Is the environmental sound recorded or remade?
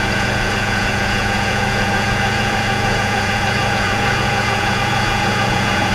remade